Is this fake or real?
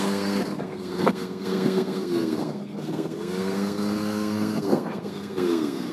fake